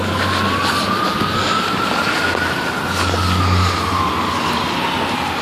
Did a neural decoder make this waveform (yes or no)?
no